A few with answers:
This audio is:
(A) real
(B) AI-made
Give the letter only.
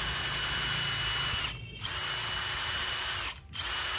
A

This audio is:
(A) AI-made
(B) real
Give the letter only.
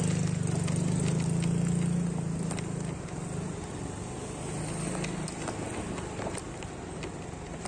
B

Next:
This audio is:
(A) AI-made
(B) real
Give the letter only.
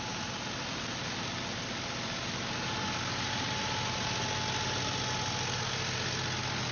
B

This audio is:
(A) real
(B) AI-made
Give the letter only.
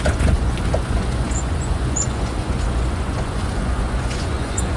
B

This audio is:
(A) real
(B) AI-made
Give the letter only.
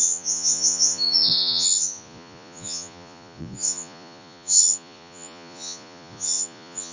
B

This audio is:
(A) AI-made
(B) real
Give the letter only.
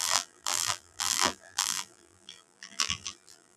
A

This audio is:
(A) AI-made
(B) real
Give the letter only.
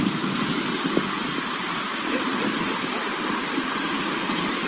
A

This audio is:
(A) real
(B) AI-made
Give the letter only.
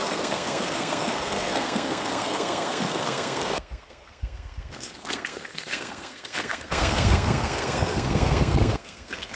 B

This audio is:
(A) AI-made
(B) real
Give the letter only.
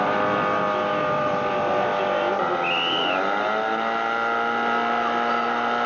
B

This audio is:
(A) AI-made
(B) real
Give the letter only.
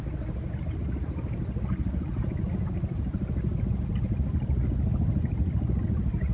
B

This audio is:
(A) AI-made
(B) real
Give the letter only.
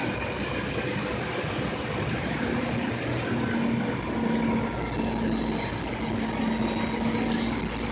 B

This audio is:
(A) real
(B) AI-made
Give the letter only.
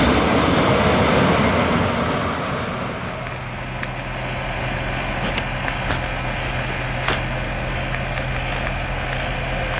A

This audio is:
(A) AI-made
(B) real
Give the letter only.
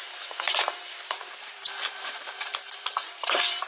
A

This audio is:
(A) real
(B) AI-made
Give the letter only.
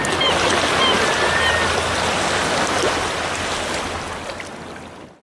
A